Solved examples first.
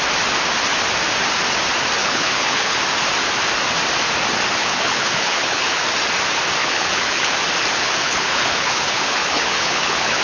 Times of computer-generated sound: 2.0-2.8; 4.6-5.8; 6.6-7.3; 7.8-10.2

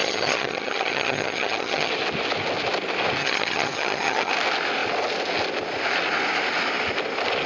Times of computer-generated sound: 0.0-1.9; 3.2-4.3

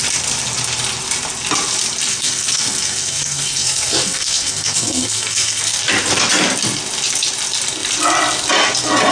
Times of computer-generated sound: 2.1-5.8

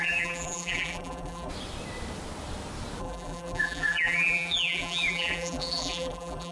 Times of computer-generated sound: 0.0-1.5; 3.0-6.5

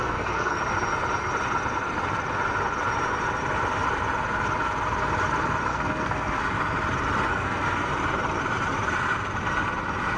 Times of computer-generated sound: 0.0-0.6; 5.7-6.4; 7.3-7.9

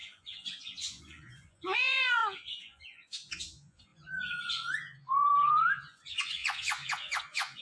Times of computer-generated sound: 0.0-7.6

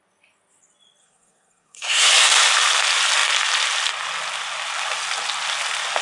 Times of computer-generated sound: 1.0-2.1

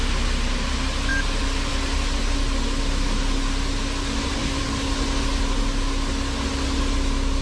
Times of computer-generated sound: none